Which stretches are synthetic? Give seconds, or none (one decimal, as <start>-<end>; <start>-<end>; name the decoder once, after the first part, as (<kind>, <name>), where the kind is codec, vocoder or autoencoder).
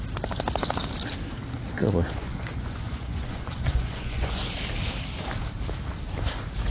1.8-4.4 (vocoder, Vocos)